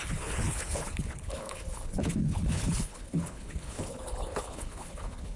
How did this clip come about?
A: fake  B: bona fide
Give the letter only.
A